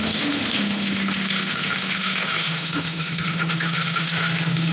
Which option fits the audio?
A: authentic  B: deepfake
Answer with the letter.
B